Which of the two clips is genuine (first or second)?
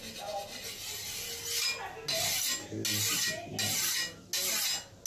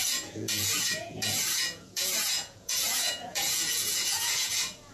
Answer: first